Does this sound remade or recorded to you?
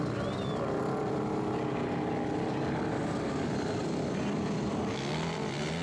recorded